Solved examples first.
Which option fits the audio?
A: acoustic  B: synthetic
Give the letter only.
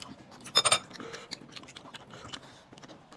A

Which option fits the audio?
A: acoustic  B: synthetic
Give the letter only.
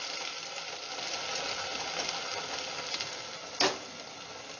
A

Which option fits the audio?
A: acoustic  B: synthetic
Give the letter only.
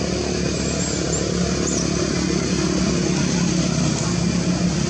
A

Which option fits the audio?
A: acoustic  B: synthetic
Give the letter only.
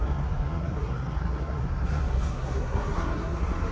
B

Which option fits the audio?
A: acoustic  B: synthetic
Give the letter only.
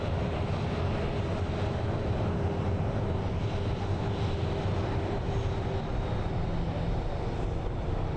A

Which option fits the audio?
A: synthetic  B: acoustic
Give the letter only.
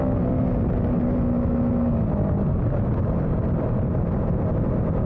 B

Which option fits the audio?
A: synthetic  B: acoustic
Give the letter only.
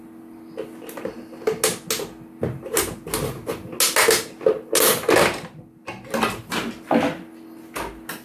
B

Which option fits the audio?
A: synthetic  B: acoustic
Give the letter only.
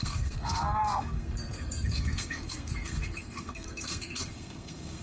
A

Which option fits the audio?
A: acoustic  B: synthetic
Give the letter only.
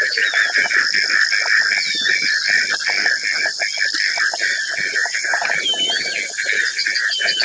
A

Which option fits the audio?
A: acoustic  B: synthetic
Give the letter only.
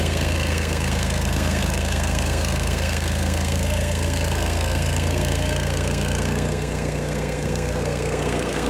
B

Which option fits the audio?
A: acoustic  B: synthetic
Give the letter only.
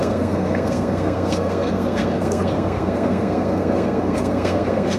B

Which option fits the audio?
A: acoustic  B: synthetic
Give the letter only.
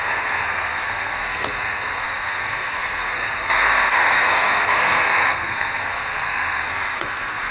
B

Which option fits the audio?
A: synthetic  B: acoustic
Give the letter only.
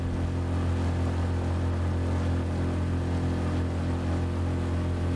B